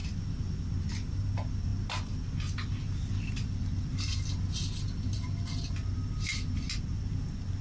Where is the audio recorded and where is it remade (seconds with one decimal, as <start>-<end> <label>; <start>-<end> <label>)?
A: 0.0-7.6 recorded